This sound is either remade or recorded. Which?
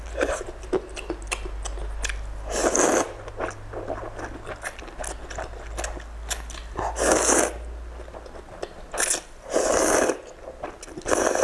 recorded